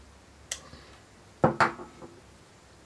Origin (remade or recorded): recorded